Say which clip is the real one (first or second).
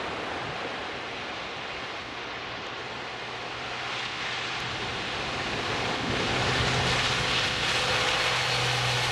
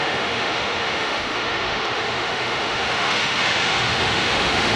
first